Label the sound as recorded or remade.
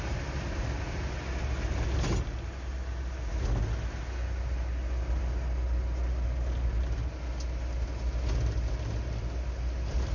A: recorded